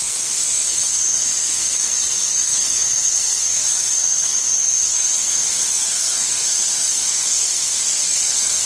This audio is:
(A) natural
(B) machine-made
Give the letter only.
B